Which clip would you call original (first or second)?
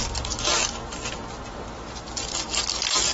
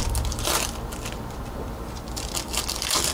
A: first